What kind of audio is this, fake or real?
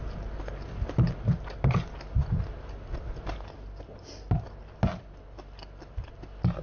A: real